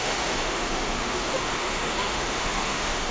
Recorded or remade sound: remade